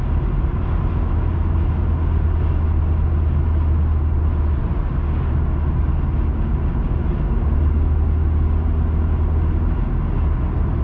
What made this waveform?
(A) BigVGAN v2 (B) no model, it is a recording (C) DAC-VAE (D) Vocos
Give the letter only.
B